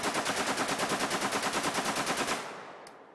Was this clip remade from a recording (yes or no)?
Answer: no